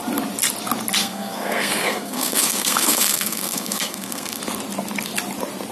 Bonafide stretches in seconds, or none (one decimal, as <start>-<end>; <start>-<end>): 0.0-1.0; 4.4-5.7